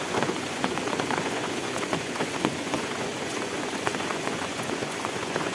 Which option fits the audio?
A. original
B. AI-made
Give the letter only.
B